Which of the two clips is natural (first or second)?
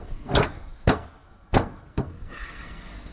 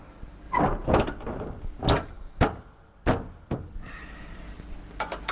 second